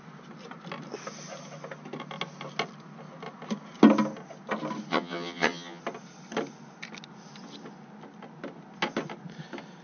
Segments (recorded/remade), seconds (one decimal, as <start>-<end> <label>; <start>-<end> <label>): 0.0-4.9 recorded; 4.9-5.8 remade; 5.8-9.8 recorded